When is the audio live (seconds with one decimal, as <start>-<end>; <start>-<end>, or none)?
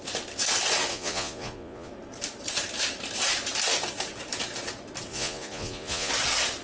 0.0-0.9; 1.9-5.1; 6.1-6.6